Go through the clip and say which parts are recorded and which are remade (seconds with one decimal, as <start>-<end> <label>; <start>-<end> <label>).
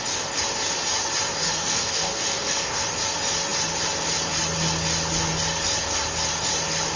0.0-1.4 recorded; 1.4-2.8 remade; 2.8-7.0 recorded